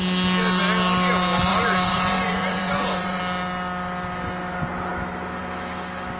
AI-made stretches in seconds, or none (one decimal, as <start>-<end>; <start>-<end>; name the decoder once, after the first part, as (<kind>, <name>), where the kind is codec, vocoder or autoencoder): 1.5-3.2 (vocoder, Vocos)